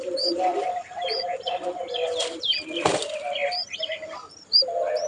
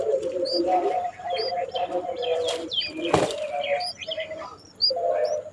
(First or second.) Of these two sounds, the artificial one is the first